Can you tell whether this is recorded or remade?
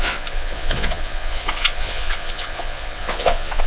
remade